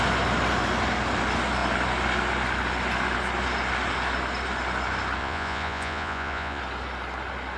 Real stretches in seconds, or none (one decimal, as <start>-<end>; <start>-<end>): 0.0-5.2; 6.6-7.6